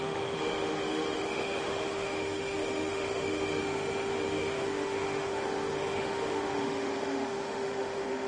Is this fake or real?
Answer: fake